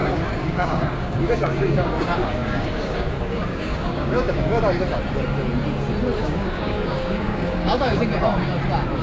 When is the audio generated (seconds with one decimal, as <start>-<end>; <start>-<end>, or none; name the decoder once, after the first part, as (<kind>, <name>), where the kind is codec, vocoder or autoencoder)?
0.0-4.6 (codec, DAC); 6.2-8.0

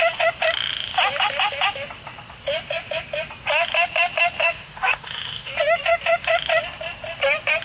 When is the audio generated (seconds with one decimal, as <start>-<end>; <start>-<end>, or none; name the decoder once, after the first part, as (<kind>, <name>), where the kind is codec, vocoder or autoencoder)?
4.4-5.5 (autoencoder, DAC-VAE)

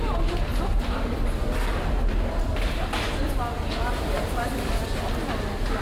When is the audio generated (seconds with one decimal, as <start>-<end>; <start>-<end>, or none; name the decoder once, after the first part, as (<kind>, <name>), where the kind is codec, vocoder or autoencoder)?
none

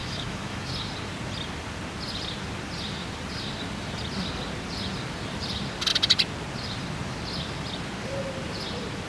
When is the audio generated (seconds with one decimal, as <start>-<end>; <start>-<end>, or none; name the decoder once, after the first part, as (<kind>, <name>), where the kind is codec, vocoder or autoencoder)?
0.0-0.7 (autoencoder, DAC-VAE)

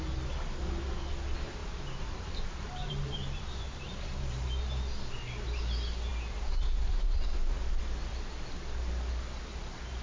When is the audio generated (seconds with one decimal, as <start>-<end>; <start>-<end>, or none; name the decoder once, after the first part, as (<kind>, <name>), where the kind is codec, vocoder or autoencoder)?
1.6-4.5 (vocoder, BigVGAN v2)